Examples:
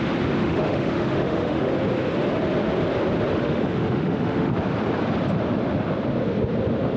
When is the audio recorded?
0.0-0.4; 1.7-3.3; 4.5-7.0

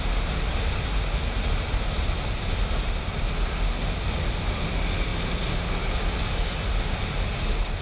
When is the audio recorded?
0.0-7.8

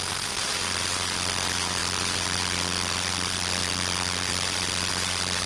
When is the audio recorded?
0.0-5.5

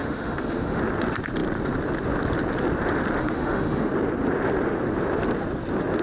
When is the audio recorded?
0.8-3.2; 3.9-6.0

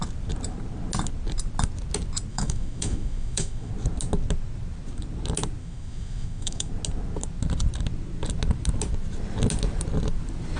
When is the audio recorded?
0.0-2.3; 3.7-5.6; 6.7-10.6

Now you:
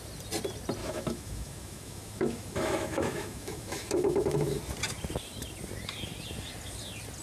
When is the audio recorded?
0.0-0.8; 4.6-7.2